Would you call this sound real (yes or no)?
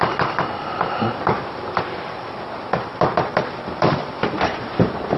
no